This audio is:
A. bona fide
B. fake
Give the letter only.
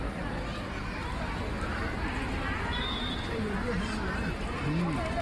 A